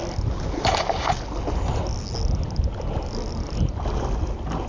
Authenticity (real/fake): real